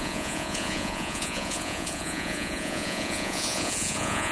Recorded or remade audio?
remade